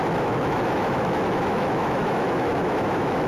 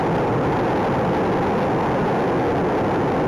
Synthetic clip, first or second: first